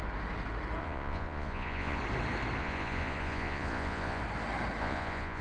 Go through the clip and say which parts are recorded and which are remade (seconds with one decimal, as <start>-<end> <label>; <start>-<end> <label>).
0.0-0.8 recorded; 0.8-2.0 remade; 2.0-2.6 recorded; 2.6-4.2 remade; 4.2-4.8 recorded; 4.8-5.4 remade